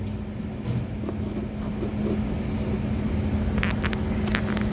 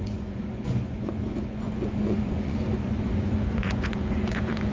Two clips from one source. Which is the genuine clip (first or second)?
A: first